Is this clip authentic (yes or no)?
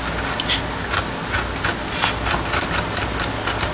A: yes